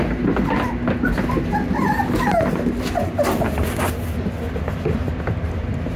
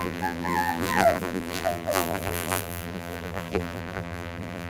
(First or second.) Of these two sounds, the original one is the first